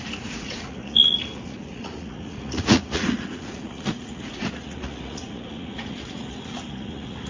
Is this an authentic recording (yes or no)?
no